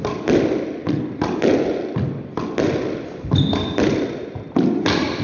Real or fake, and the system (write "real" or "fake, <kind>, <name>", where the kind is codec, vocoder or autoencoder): real